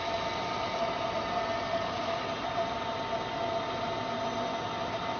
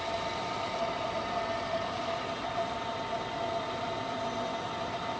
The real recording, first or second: first